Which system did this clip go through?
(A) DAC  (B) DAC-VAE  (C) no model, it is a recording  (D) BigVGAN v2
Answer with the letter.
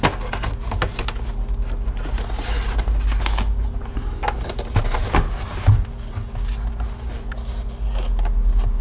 C